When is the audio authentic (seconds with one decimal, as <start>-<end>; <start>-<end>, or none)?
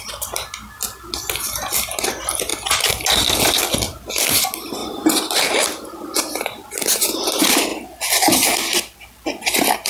0.0-4.8; 5.4-9.9